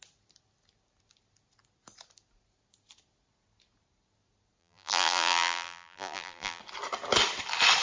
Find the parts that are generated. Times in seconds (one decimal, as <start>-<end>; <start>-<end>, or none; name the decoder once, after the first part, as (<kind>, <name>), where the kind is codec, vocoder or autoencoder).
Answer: 4.6-6.6 (vocoder, BigVGAN v2)